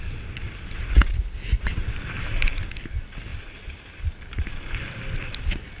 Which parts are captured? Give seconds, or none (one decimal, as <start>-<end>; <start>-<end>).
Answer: 0.0-0.8; 1.8-5.8